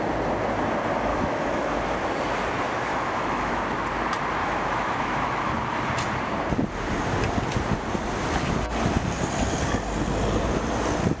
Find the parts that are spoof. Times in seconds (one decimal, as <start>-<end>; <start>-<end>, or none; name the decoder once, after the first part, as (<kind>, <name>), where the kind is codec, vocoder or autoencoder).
1.1-1.7 (autoencoder, DAC-VAE); 2.9-3.6; 4.4-5.5

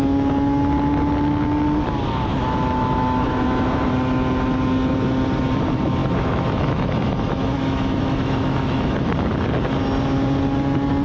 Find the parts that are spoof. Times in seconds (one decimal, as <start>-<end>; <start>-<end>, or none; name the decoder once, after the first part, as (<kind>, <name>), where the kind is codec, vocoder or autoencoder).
2.3-3.9 (autoencoder, DAC-VAE); 6.0-9.1

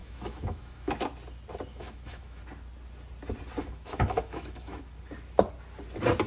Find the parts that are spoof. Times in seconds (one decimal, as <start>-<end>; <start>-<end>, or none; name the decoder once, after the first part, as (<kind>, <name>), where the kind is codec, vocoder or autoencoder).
0.0-0.9 (autoencoder, DAC-VAE); 1.7-2.4; 3.6-4.8

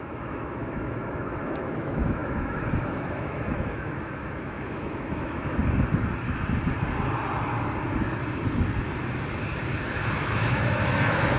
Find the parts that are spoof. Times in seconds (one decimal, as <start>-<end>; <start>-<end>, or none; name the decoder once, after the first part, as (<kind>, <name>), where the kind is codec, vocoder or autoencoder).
0.0-5.6 (autoencoder, DAC-VAE); 10.2-11.4

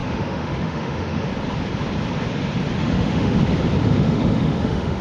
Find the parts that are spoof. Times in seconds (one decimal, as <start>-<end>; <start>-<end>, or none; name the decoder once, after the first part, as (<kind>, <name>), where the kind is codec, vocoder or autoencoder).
0.0-1.3 (autoencoder, DAC-VAE); 2.8-3.4; 3.8-5.0

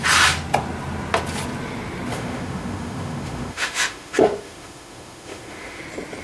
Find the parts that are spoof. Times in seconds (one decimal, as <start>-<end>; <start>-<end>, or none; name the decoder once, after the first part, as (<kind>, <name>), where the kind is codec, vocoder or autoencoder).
2.1-5.8 (autoencoder, DAC-VAE)